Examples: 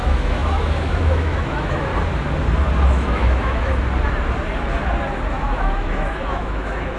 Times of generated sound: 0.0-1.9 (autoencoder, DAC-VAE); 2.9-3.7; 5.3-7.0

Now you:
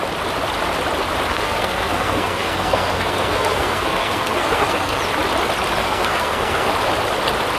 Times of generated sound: 1.3-5.0 (codec, SNAC); 5.8-6.7

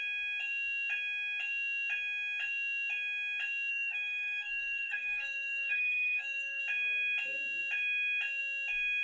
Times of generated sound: 3.7-6.6 (codec, SNAC)

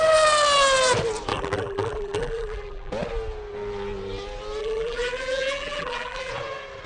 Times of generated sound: 1.3-2.9 (vocoder, BigVGAN v2); 4.6-6.3

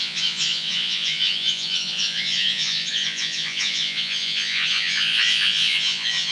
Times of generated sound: 0.0-6.3 (vocoder, Vocos)